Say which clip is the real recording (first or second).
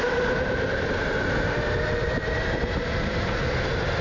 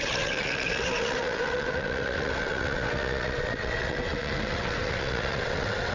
first